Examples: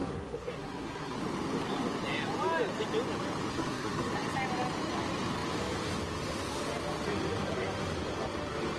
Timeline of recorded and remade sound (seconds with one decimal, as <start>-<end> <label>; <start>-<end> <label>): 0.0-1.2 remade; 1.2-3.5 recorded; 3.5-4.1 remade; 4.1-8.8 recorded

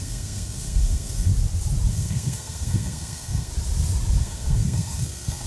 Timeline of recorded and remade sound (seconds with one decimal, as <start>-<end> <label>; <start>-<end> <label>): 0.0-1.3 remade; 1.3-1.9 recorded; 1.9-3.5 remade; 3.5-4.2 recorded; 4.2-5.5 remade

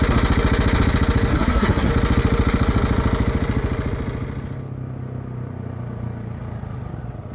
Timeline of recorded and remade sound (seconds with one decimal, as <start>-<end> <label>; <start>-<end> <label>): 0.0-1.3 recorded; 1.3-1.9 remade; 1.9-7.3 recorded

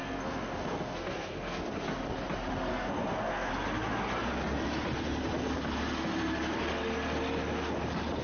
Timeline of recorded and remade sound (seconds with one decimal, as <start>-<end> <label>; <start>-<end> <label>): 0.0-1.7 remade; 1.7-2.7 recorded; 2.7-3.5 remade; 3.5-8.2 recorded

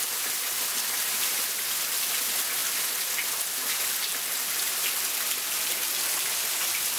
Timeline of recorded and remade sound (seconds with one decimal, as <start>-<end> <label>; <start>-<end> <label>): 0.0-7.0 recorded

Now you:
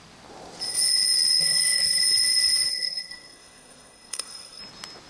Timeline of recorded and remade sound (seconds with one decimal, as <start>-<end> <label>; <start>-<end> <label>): 0.0-1.4 recorded; 1.4-2.0 remade; 2.0-2.7 recorded; 2.7-4.6 remade; 4.6-5.1 recorded

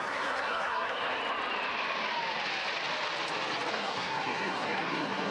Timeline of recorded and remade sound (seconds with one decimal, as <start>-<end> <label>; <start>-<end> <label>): 0.0-1.2 remade; 1.2-3.7 recorded; 3.7-5.3 remade